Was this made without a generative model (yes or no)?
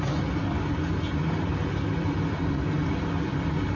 yes